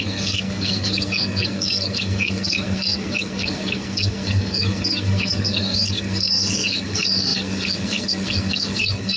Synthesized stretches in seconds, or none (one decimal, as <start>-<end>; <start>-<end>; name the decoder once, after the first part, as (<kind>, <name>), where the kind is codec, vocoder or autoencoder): 0.0-9.2 (codec, SNAC)